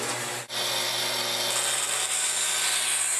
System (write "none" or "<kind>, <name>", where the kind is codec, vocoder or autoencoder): none